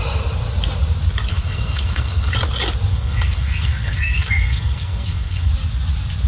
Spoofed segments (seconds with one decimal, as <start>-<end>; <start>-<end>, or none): 1.3-2.3; 2.9-5.5